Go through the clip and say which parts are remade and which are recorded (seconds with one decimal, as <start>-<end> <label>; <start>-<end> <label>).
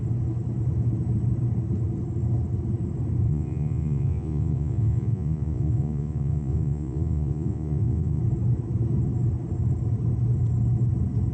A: 0.0-3.3 recorded; 3.3-8.2 remade; 8.2-11.3 recorded